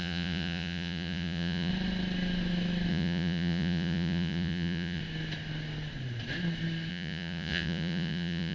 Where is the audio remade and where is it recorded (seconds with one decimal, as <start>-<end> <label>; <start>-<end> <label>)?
0.0-1.7 remade; 1.7-2.9 recorded; 2.9-5.0 remade; 5.0-6.9 recorded; 6.9-8.5 remade